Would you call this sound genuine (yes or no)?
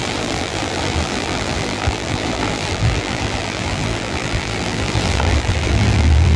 no